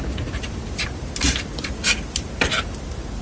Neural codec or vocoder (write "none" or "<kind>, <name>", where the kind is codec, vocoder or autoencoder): none